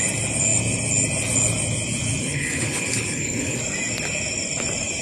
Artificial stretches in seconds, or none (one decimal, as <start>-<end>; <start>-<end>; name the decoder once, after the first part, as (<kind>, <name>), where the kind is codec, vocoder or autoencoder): 2.2-3.6 (codec, HILCodec)